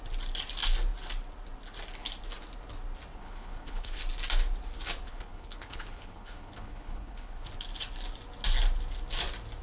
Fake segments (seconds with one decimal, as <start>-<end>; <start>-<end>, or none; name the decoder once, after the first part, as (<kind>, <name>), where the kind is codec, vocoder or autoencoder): 3.2-4.0 (codec, HILCodec); 5.1-7.5